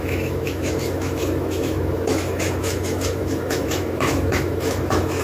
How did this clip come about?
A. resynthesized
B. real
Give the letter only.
A